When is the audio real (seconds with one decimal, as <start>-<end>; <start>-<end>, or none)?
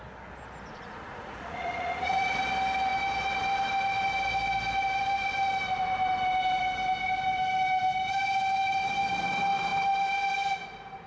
0.0-0.7; 2.4-11.1